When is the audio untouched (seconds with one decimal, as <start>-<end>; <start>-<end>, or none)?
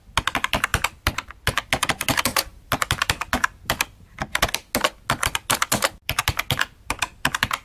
0.0-7.6